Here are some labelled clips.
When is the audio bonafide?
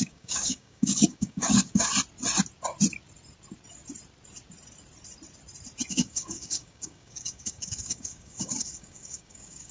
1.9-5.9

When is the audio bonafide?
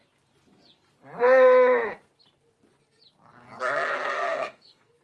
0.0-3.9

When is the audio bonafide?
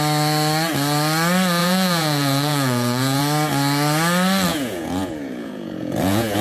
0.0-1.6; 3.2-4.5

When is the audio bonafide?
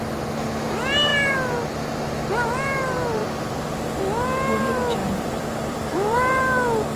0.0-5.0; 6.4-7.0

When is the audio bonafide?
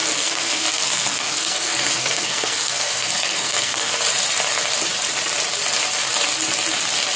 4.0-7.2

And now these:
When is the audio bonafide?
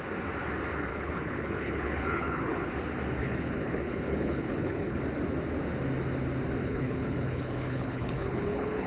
0.0-0.9; 2.7-3.2; 5.0-6.6